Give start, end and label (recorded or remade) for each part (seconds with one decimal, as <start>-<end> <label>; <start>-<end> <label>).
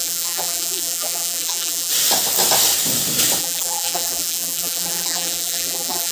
0.0-1.9 remade; 1.9-3.4 recorded; 3.4-6.1 remade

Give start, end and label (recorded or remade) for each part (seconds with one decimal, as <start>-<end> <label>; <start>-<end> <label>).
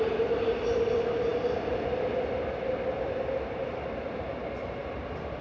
0.0-1.3 recorded; 1.3-4.3 remade; 4.3-4.8 recorded; 4.8-5.4 remade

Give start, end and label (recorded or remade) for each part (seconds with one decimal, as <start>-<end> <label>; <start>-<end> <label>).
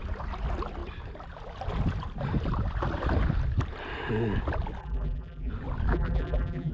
0.0-4.8 recorded; 4.8-5.5 remade; 5.5-5.9 recorded; 5.9-6.7 remade